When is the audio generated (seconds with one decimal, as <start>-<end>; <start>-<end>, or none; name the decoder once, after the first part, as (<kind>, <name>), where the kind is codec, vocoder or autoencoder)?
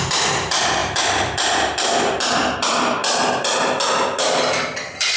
0.0-3.0 (vocoder, BigVGAN v2); 4.4-5.2